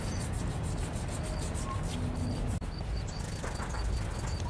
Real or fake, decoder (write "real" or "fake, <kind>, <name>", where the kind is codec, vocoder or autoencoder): real